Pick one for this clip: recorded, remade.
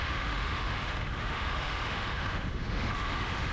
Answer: remade